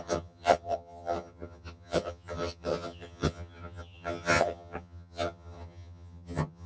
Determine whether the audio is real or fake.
fake